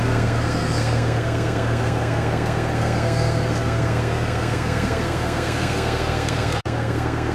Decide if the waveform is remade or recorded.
remade